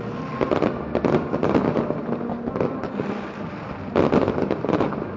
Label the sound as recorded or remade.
recorded